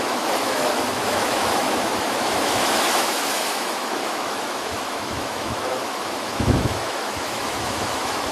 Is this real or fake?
fake